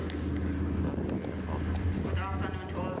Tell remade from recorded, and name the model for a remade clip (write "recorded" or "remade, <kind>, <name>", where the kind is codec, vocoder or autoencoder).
recorded